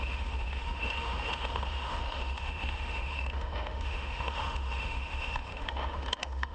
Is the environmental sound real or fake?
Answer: fake